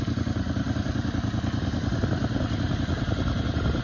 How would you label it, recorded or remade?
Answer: recorded